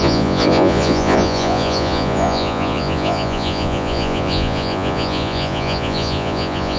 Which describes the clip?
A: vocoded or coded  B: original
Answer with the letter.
A